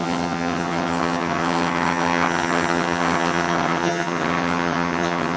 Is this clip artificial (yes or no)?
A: yes